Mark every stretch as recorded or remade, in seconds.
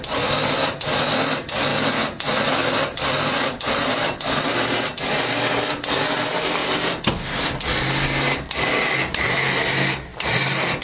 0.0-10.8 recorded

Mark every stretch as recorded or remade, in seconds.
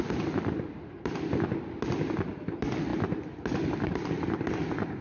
0.0-5.0 recorded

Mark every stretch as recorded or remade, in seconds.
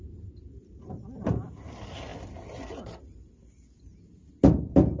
0.0-5.0 recorded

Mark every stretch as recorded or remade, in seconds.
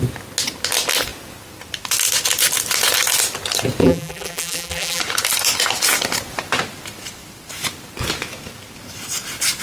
0.0-3.8 recorded; 3.8-5.0 remade; 5.0-9.6 recorded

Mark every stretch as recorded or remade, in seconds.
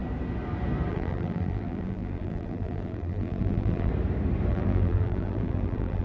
0.0-0.9 recorded; 0.9-3.9 remade; 3.9-4.5 recorded; 4.5-6.0 remade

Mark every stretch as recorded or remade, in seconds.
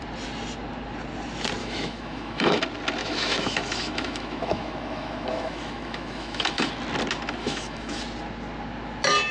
0.0-1.6 recorded; 1.6-2.6 remade; 2.6-3.0 recorded; 3.0-6.7 remade; 6.7-7.4 recorded; 7.4-8.0 remade; 8.0-9.3 recorded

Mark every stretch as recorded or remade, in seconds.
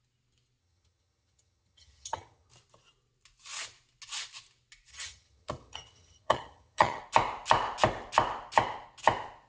0.0-0.6 recorded; 0.6-2.5 remade; 2.5-4.9 recorded; 4.9-7.0 remade; 7.0-9.5 recorded